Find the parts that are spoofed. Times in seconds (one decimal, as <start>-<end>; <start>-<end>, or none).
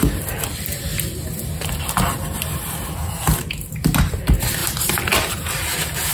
none